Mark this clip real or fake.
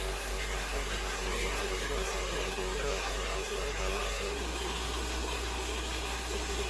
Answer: fake